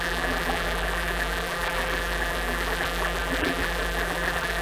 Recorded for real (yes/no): no